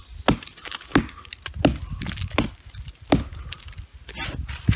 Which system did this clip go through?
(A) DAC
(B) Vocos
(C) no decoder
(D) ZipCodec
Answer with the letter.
C